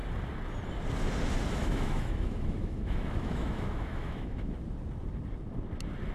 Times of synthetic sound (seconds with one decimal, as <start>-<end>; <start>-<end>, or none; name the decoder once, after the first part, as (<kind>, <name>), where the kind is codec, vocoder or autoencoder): 1.6-4.5 (autoencoder, DAC-VAE)